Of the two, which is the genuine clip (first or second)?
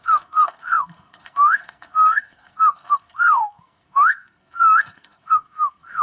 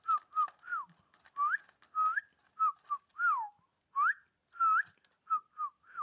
second